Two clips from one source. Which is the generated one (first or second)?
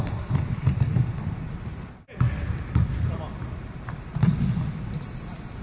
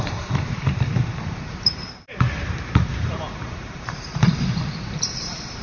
second